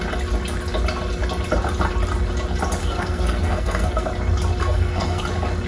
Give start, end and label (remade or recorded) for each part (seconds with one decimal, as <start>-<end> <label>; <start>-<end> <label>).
0.0-2.8 recorded; 2.8-4.1 remade; 4.1-4.6 recorded; 4.6-5.2 remade; 5.2-5.7 recorded